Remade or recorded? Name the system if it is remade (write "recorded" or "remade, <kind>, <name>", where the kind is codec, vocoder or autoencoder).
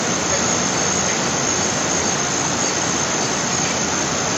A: recorded